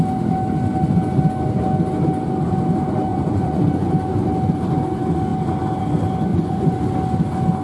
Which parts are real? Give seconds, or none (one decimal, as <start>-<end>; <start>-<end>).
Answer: 0.0-3.1; 3.9-6.3; 6.8-7.6